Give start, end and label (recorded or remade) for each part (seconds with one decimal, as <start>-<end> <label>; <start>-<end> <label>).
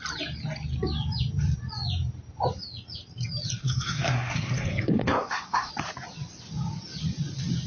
0.0-3.6 recorded; 3.6-5.7 remade; 5.7-7.7 recorded